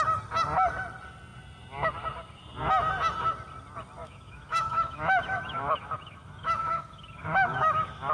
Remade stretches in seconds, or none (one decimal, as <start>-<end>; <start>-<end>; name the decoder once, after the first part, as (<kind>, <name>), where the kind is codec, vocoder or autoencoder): 4.0-8.1 (autoencoder, DAC-VAE)